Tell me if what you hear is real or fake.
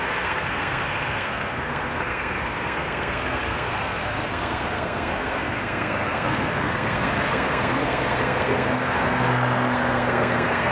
fake